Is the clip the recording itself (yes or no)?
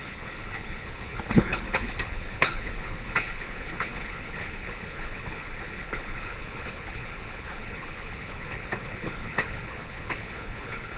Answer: no